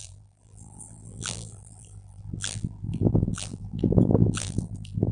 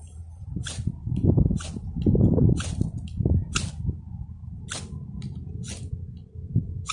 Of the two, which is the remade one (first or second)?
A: first